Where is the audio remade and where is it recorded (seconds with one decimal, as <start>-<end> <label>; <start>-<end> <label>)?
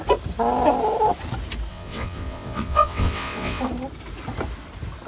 0.0-1.7 recorded; 1.7-3.6 remade; 3.6-5.1 recorded